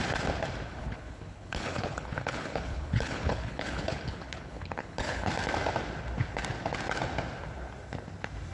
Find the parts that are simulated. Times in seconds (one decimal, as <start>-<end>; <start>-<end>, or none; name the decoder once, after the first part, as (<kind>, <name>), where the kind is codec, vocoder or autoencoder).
0.8-5.3 (codec, HILCodec)